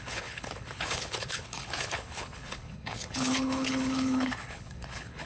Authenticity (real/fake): fake